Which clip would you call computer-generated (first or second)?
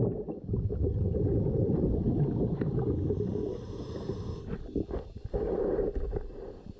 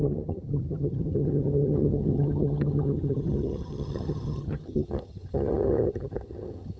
second